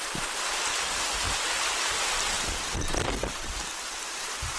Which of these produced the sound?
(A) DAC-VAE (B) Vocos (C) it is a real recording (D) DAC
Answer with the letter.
C